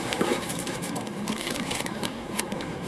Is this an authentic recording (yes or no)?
no